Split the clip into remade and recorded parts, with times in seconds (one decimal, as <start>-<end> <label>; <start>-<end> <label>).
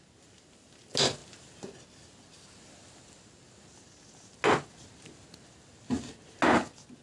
0.0-7.0 recorded